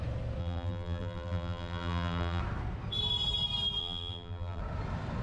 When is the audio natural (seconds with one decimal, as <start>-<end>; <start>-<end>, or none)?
0.0-0.4; 2.4-3.8; 4.6-5.2